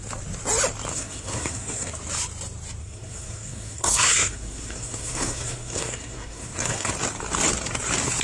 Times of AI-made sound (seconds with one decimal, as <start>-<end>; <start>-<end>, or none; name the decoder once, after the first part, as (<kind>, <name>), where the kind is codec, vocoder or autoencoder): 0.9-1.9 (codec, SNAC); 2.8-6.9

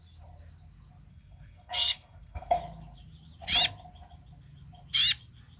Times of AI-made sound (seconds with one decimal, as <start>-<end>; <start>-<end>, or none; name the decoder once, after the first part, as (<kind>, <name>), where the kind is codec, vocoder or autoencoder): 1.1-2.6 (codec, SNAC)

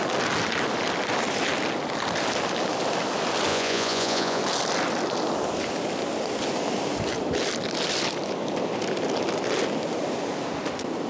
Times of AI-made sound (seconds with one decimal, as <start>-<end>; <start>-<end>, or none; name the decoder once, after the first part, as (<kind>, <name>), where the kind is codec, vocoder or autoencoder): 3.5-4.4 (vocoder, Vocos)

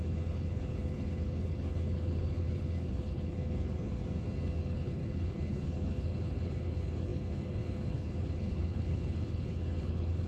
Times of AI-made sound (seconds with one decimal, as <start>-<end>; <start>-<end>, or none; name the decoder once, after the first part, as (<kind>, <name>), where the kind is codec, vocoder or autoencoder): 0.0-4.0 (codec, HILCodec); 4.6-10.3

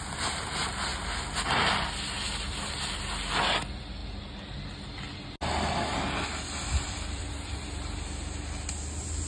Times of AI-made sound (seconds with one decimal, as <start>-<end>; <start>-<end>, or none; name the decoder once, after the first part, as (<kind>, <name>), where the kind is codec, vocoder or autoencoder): none

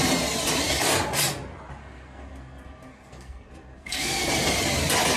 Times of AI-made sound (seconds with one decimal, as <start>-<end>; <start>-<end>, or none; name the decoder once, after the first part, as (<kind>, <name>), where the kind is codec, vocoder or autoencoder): 1.8-4.3 (codec, SNAC)

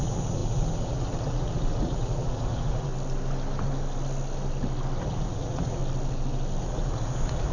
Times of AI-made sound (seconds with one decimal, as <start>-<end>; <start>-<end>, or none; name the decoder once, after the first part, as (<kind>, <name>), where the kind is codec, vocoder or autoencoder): 0.0-2.9 (vocoder, Vocos); 5.0-5.8; 6.6-7.5

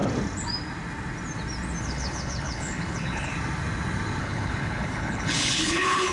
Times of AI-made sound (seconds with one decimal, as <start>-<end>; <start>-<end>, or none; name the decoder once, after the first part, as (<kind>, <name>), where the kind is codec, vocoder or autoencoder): 1.8-3.3 (codec, HILCodec); 4.2-6.1